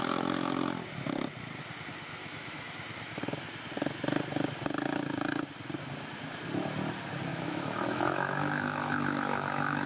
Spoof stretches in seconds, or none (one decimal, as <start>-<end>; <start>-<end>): 2.2-2.7; 7.3-9.9